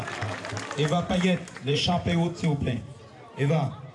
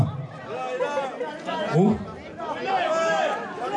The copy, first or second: first